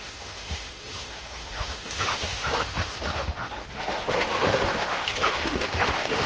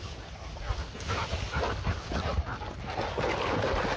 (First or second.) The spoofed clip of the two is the first